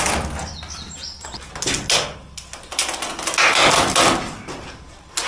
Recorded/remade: recorded